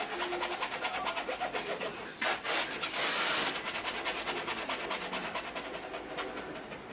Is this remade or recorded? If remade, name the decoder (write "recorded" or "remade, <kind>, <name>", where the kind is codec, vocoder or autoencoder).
recorded